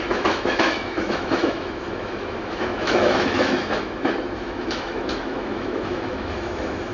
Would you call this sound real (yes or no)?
no